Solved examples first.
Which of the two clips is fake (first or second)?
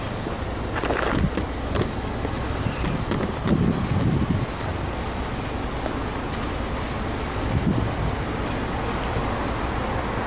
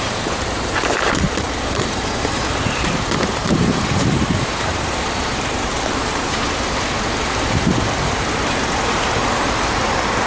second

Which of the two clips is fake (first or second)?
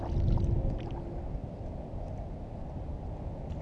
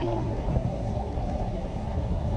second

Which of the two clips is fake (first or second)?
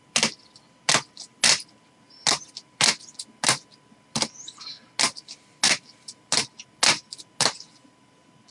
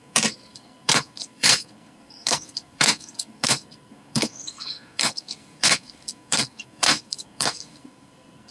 second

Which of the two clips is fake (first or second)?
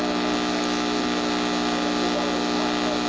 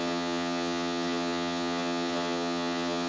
second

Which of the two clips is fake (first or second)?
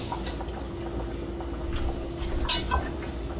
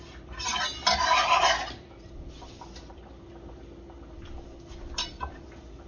second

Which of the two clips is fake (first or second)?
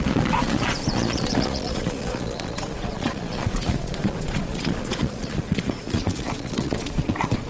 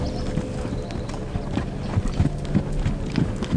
first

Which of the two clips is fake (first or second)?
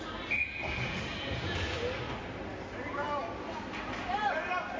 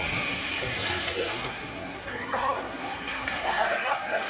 second